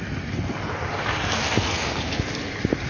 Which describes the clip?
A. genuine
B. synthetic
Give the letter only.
A